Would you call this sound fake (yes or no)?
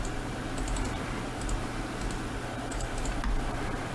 no